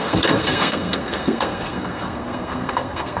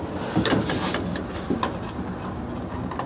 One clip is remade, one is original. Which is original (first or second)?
second